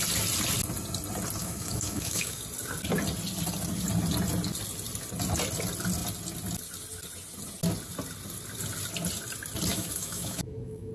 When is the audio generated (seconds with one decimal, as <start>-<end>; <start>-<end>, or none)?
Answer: 1.4-2.4; 9.7-10.9